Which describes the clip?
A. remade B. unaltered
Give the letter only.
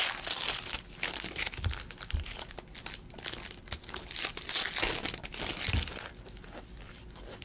B